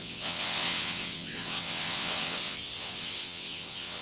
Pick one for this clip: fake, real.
fake